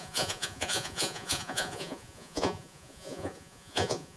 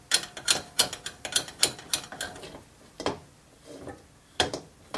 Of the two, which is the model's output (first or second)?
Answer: first